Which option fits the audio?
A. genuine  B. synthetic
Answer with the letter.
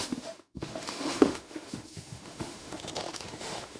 B